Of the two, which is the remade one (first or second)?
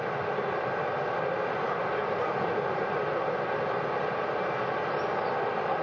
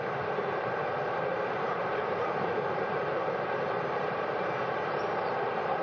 second